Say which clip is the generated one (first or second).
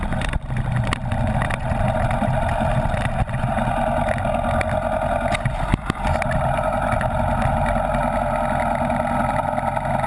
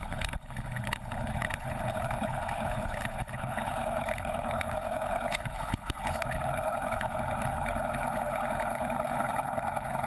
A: second